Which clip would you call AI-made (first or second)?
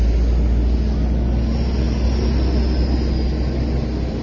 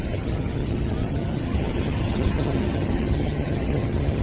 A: second